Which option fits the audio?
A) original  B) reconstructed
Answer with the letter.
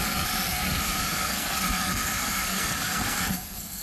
B